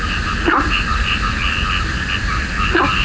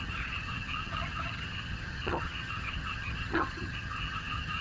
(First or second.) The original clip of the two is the first